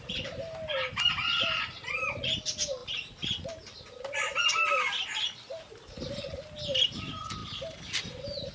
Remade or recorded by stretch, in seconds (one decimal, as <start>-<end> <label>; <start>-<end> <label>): 0.0-8.5 recorded